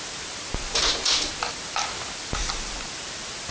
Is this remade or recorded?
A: recorded